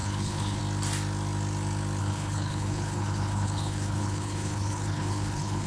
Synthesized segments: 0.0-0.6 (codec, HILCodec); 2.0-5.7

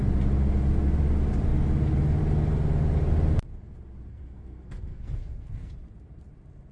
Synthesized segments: 4.1-5.7 (codec, SNAC)

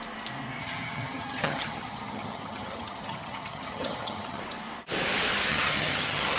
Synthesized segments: 0.6-4.4 (vocoder, HiFi-GAN); 5.5-6.4

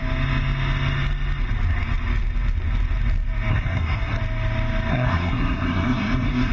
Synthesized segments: 3.5-4.2 (codec, SNAC); 4.9-6.5

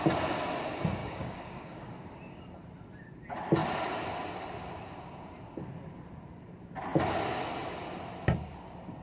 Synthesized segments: 1.0-1.9 (codec, DAC)

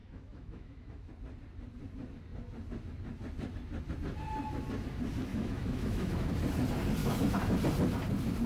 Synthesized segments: 0.0-1.1 (autoencoder, DAC-VAE); 5.3-6.3; 7.0-7.6

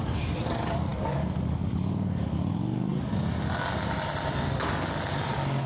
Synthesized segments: 0.0-2.9 (codec, DAC); 5.3-5.7